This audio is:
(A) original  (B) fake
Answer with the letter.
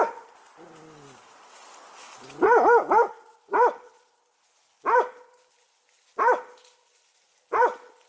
A